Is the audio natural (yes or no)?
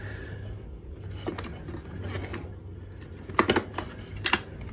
yes